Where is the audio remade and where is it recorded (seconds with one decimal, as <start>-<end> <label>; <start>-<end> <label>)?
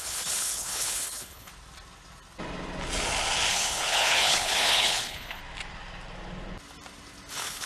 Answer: 0.0-1.5 remade; 1.5-3.5 recorded; 3.5-5.4 remade; 5.4-7.3 recorded; 7.3-7.7 remade